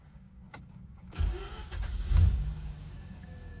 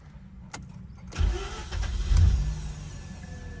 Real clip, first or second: second